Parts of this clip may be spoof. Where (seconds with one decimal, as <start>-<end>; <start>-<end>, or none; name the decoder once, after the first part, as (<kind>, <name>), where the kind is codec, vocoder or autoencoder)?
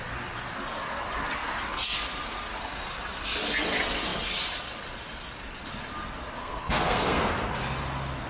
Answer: 6.4-7.5 (codec, SNAC)